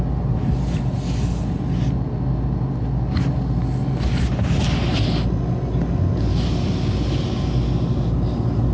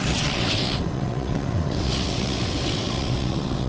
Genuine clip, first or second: first